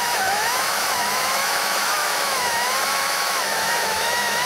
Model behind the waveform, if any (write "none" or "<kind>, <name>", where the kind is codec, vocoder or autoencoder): autoencoder, DAC-VAE